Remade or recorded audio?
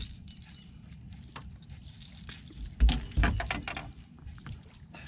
recorded